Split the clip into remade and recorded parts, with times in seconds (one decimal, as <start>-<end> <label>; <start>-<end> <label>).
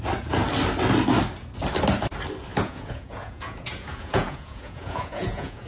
0.0-2.5 recorded; 2.5-5.7 remade